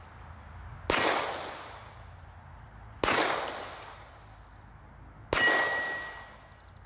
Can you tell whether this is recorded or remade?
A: recorded